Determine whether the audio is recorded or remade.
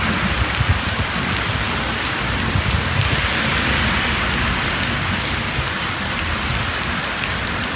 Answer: recorded